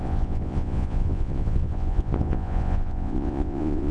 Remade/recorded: remade